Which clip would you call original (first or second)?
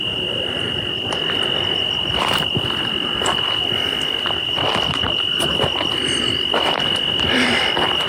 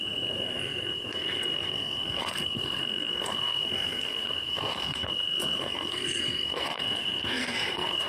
first